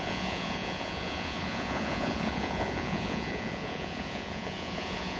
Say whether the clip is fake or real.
fake